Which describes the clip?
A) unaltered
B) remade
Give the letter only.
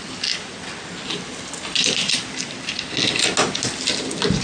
A